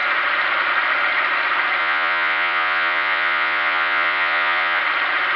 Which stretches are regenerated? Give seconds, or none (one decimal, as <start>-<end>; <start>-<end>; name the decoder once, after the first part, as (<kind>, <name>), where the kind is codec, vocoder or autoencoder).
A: 1.8-4.8 (vocoder, Vocos)

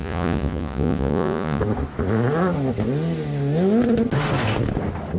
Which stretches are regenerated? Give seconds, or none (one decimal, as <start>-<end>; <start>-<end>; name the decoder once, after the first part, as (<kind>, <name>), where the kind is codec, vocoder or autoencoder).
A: 0.0-1.6 (vocoder, Vocos)

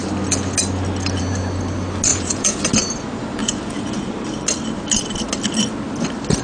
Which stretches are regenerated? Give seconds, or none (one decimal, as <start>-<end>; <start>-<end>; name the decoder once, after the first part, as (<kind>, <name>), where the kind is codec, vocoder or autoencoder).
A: 2.1-2.6 (vocoder, Vocos); 3.4-4.0

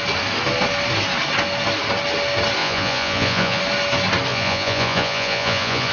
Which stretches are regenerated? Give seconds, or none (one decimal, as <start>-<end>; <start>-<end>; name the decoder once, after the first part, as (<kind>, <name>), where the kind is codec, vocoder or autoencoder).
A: 2.6-3.6 (vocoder, Vocos); 4.3-5.9